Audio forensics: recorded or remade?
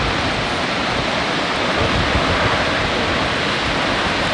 recorded